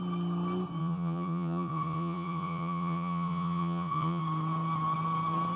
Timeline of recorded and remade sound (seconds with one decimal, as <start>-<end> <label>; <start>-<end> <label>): 0.0-0.8 recorded; 0.8-4.2 remade; 4.2-5.6 recorded